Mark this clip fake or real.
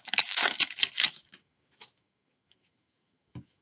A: fake